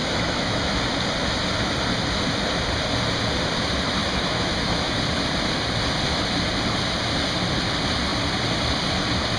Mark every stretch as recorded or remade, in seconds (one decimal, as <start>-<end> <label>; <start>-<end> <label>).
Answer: 0.0-0.8 remade; 0.8-4.0 recorded; 4.0-5.0 remade; 5.0-9.4 recorded